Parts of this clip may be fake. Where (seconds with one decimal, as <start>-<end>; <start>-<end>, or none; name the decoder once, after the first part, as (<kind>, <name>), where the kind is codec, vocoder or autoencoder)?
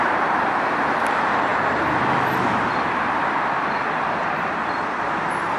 0.0-5.6 (vocoder, BigVGAN v2)